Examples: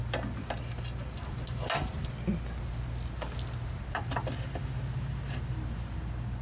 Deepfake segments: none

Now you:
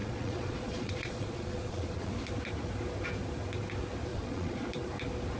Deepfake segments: 0.0-2.1 (vocoder, Vocos); 4.1-4.7